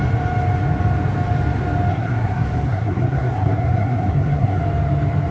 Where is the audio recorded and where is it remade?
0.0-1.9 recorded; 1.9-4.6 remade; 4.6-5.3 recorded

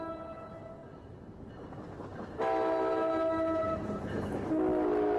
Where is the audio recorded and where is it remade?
0.0-0.8 recorded; 0.8-1.5 remade; 1.5-3.6 recorded; 3.6-4.5 remade; 4.5-5.2 recorded

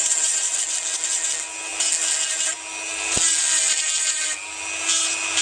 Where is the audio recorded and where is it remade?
0.0-5.4 recorded

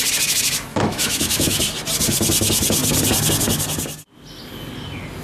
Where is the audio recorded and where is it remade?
0.0-0.7 recorded; 0.7-1.6 remade; 1.6-5.2 recorded

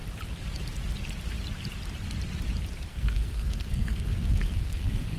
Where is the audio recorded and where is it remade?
0.0-2.9 recorded; 2.9-5.2 remade

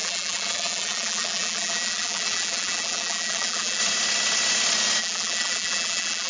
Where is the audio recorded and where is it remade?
0.0-3.8 remade; 3.8-5.0 recorded; 5.0-6.3 remade

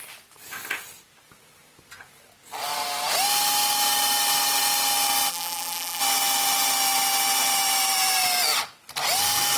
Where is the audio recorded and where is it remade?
0.0-5.3 recorded; 5.3-6.0 remade; 6.0-9.6 recorded

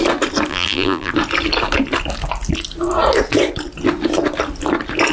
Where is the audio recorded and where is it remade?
0.0-0.5 recorded; 0.5-1.1 remade; 1.1-5.1 recorded